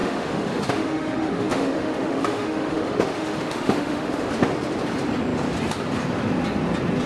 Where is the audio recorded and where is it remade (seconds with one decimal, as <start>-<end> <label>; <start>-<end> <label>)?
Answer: 0.0-4.3 remade; 4.3-7.1 recorded